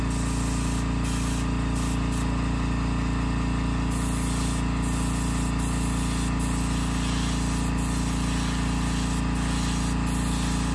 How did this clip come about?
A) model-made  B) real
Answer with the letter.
B